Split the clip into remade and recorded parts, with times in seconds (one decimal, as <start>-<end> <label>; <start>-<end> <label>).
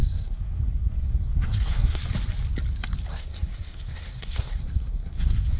0.0-2.0 remade; 2.0-3.1 recorded; 3.1-5.6 remade